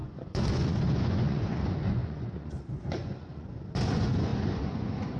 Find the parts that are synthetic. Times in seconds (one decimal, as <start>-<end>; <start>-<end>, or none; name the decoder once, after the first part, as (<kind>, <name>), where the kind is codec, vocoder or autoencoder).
0.0-5.2 (vocoder, Vocos)